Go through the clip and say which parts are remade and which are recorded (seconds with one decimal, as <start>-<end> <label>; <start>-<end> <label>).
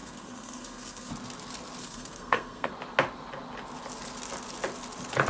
0.0-1.1 remade; 1.1-1.8 recorded; 1.8-2.7 remade; 2.7-5.3 recorded